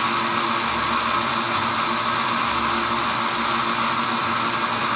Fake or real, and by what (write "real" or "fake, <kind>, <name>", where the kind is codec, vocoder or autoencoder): real